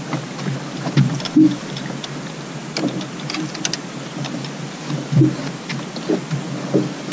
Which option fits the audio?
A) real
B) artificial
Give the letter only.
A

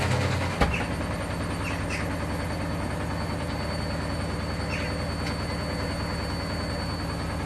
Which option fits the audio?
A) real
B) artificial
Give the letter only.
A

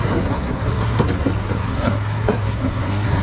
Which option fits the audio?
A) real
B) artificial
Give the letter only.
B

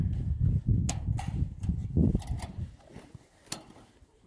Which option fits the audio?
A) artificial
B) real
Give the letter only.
B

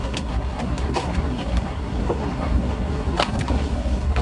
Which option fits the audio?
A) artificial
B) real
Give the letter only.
A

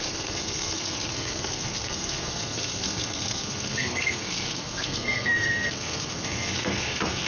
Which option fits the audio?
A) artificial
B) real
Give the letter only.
A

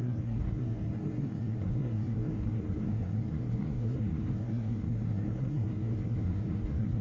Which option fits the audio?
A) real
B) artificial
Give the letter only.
B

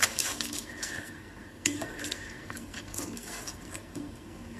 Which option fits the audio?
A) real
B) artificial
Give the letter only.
B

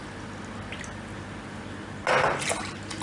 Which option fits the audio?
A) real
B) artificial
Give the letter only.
A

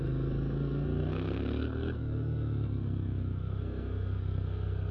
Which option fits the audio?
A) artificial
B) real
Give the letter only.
A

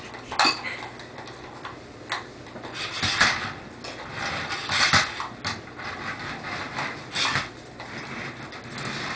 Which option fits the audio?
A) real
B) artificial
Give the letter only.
A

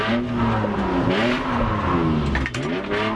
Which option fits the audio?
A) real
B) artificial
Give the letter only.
A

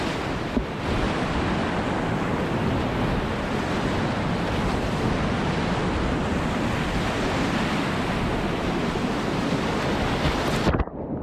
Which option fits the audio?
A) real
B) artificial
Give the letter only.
A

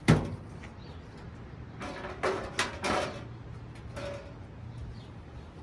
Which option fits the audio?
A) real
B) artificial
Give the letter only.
A